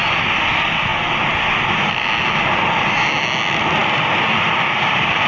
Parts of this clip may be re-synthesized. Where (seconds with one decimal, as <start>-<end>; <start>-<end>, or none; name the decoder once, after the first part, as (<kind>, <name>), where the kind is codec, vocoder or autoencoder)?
3.8-5.3 (vocoder, BigVGAN v2)